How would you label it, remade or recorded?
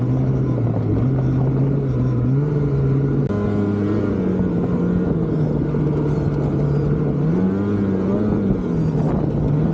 recorded